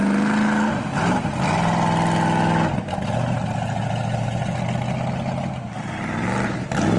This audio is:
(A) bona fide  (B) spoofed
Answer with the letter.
A